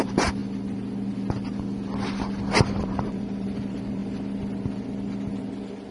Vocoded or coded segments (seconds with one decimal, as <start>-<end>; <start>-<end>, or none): 0.0-0.4; 2.8-4.0